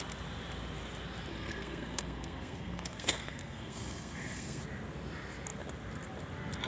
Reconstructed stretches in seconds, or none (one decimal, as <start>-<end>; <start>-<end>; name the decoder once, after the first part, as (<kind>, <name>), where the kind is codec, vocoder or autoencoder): 1.3-4.6 (codec, SNAC)